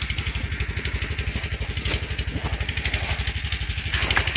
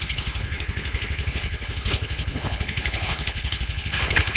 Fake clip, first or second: second